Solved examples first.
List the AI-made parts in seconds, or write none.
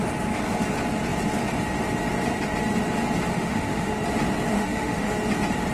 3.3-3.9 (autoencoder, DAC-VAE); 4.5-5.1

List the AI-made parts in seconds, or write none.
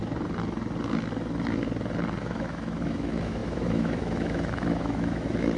2.2-5.6 (autoencoder, DAC-VAE)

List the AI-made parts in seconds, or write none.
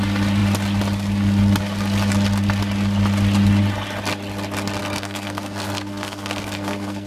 4.8-7.1 (codec, SNAC)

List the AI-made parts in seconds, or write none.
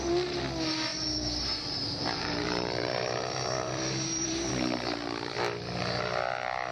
0.9-4.5 (vocoder, BigVGAN v2)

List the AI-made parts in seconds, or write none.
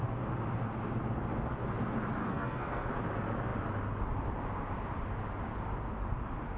2.2-2.9 (codec, SNAC)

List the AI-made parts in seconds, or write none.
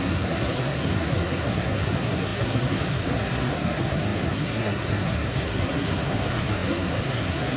0.0-7.6 (codec, SNAC)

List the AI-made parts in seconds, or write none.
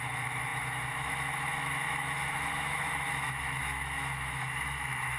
0.0-5.2 (autoencoder, DAC-VAE)